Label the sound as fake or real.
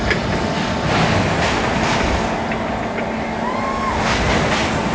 real